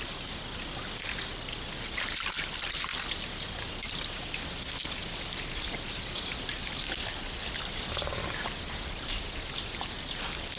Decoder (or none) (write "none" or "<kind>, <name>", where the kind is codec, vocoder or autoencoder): none